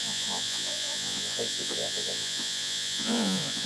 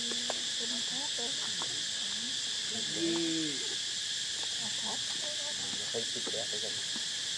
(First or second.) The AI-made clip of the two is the first